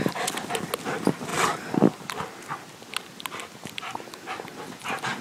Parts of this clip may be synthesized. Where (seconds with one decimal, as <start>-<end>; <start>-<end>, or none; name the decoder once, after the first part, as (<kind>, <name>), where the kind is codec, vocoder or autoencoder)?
none